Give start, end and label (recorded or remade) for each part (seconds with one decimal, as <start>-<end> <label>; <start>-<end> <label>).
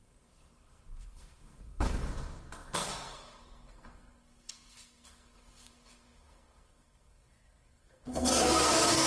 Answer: 0.0-9.1 remade